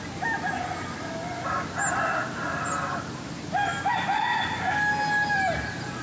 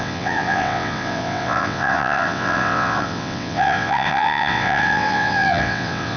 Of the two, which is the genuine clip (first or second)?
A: first